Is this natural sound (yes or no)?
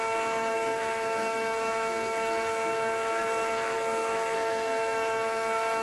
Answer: no